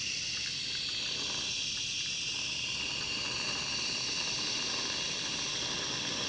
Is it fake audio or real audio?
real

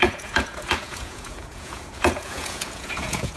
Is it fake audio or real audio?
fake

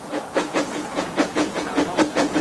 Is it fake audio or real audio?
fake